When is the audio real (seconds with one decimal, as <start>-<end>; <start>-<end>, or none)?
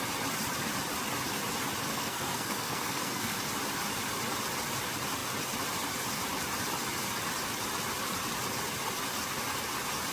0.0-1.9; 3.4-10.1